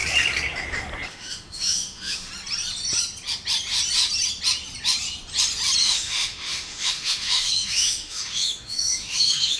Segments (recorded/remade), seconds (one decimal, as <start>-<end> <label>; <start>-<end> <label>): 0.0-1.1 recorded; 1.1-2.3 remade; 2.3-5.8 recorded; 5.8-9.6 remade